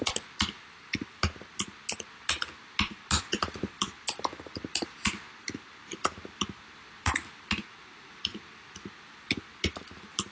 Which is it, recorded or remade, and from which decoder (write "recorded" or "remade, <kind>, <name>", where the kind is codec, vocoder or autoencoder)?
recorded